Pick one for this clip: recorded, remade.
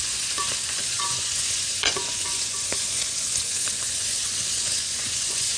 remade